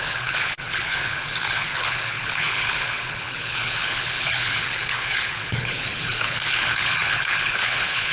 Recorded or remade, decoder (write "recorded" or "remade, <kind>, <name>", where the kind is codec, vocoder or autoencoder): remade, codec, HILCodec